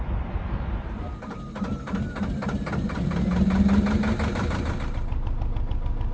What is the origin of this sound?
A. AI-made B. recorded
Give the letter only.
B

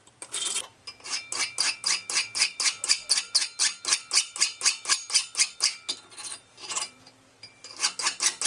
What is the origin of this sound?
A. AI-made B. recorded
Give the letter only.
B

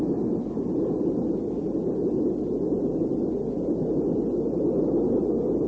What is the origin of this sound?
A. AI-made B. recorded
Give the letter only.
B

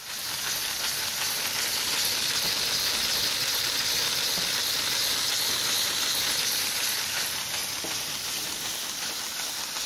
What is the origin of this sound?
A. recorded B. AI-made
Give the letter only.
A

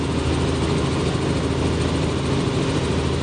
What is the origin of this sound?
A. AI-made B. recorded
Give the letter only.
B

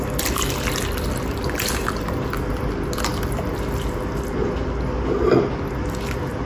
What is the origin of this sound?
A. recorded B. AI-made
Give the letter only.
A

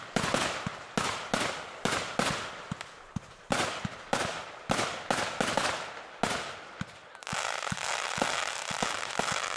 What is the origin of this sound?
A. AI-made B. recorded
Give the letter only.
B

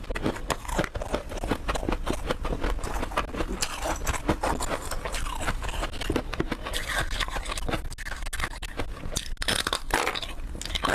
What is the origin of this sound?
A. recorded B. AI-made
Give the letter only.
A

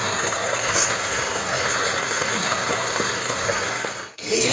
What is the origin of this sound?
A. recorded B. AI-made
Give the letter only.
B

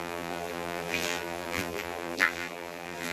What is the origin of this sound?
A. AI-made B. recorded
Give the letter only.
A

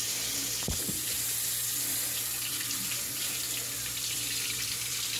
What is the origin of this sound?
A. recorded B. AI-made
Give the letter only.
B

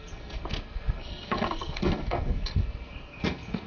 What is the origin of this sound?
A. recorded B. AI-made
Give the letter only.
B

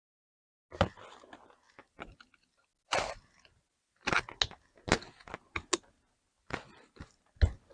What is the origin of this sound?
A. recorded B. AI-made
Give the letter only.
A